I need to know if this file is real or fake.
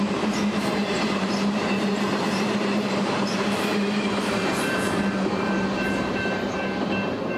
fake